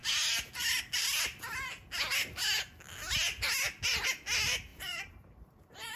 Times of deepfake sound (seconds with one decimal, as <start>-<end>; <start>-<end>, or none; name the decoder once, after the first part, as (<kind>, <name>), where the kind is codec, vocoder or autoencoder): 4.7-6.0 (vocoder, BigVGAN v2)